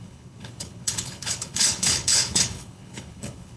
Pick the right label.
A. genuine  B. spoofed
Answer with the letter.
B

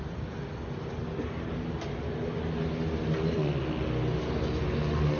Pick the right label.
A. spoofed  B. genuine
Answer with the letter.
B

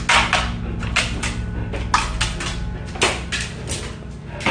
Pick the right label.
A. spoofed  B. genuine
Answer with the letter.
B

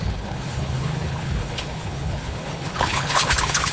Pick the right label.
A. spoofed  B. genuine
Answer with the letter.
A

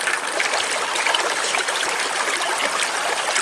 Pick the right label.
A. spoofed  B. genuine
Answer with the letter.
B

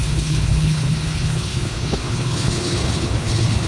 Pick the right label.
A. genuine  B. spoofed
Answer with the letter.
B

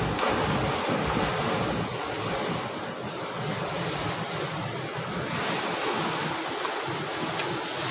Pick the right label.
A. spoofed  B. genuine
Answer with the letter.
B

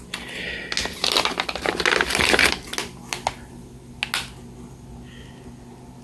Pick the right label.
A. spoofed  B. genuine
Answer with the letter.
B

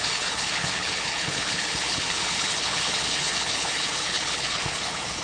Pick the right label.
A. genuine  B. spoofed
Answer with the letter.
B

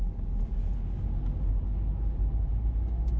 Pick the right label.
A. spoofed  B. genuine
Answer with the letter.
B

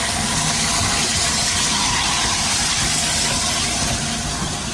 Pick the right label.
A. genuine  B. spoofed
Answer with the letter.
A